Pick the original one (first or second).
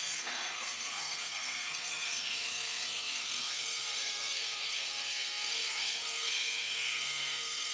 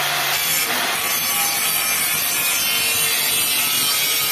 second